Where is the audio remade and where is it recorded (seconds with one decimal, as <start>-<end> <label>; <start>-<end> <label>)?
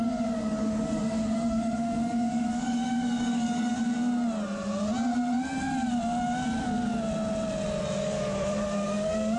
0.0-3.8 remade; 3.8-8.0 recorded; 8.0-9.4 remade